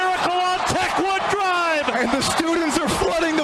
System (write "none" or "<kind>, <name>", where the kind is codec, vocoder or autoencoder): none